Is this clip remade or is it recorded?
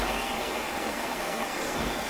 remade